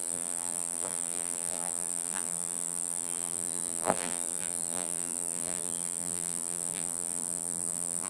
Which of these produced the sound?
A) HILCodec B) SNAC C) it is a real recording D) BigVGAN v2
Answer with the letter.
D